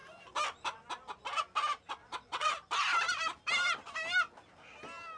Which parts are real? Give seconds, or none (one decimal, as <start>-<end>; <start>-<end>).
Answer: 0.0-2.0; 2.5-5.2